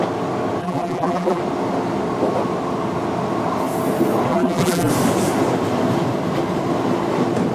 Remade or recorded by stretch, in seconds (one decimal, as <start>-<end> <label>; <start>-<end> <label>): 0.0-0.6 recorded; 0.6-1.4 remade; 1.4-4.3 recorded; 4.3-4.9 remade; 4.9-7.5 recorded